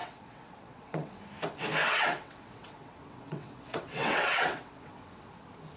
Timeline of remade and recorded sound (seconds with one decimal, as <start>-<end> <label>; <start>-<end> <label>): 0.0-1.2 remade; 1.2-1.8 recorded; 1.8-5.3 remade; 5.3-5.8 recorded

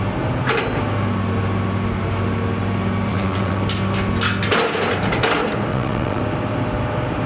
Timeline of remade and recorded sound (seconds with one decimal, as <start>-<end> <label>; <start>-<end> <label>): 0.0-3.1 recorded; 3.1-3.6 remade; 3.6-5.7 recorded; 5.7-6.2 remade; 6.2-7.3 recorded